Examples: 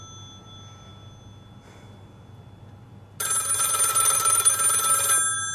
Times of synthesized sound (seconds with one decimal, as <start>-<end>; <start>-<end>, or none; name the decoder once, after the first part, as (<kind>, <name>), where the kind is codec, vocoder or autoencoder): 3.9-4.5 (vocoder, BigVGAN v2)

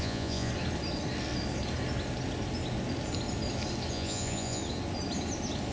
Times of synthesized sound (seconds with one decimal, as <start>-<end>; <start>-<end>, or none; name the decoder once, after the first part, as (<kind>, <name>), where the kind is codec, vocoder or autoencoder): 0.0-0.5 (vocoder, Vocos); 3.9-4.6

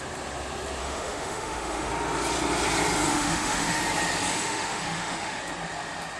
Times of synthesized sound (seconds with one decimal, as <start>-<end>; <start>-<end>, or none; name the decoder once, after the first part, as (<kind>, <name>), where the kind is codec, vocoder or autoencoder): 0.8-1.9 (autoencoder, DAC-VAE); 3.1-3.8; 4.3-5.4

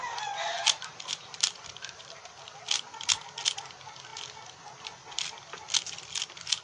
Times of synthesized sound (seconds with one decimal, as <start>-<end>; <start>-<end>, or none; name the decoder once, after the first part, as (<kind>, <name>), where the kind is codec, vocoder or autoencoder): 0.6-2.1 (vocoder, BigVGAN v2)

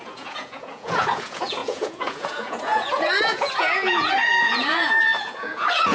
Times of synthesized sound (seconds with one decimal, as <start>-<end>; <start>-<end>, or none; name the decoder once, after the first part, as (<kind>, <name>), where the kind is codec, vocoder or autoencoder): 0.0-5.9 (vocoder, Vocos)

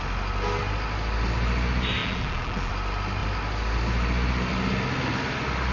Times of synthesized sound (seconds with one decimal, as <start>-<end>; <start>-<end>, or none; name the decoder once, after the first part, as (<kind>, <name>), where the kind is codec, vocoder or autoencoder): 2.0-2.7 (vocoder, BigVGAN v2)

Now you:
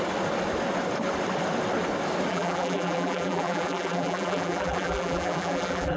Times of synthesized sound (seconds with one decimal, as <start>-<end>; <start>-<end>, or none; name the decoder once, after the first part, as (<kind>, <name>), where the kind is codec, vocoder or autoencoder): 2.3-6.0 (vocoder, BigVGAN v2)